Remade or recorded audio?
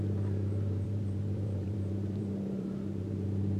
remade